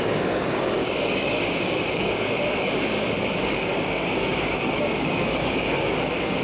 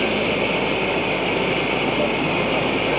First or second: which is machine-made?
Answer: first